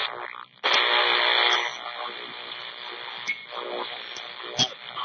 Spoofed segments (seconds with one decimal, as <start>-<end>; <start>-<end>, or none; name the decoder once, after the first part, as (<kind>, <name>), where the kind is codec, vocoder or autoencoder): none